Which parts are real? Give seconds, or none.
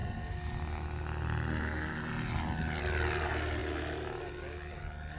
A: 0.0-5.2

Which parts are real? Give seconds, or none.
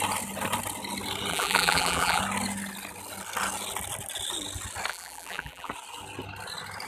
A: 0.0-1.3; 2.2-4.9; 5.7-6.9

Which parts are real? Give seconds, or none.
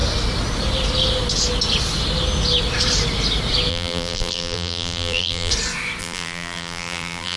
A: 0.0-3.7; 5.5-6.0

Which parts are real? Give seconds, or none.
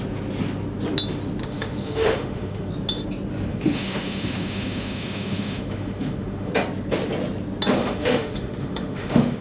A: 0.0-1.4; 2.7-3.5; 6.5-7.8